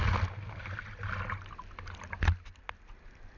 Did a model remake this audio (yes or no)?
no